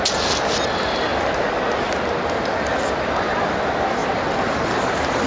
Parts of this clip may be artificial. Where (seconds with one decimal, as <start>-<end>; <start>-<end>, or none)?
none